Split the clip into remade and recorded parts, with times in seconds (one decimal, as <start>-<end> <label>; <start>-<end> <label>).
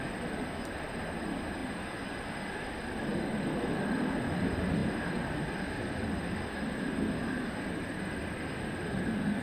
0.0-9.4 recorded